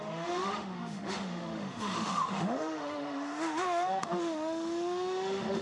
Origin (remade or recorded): remade